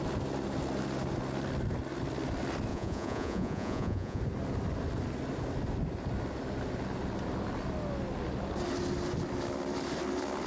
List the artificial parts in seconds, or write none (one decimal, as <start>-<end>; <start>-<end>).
2.7-4.2